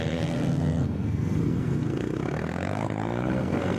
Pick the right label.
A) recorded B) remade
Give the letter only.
B